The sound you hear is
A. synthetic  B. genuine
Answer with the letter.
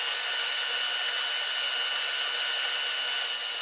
B